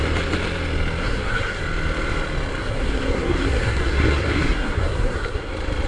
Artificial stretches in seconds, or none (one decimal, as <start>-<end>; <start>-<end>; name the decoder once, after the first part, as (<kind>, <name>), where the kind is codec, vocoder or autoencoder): 1.0-1.6 (codec, SNAC); 2.6-5.5